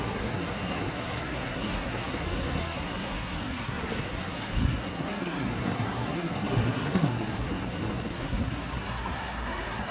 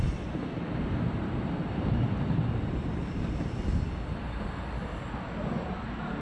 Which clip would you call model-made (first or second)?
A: first